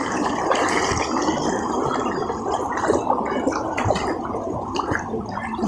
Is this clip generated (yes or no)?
no